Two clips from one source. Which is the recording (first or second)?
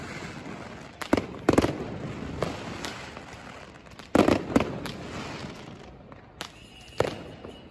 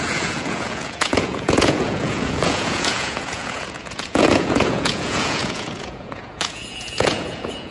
first